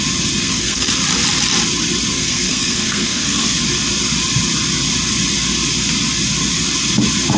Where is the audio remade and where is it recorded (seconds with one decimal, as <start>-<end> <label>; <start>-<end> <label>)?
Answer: 0.0-0.4 recorded; 0.4-0.9 remade; 0.9-2.1 recorded; 2.1-3.6 remade; 3.6-7.4 recorded